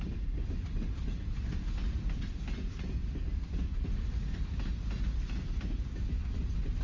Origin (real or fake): real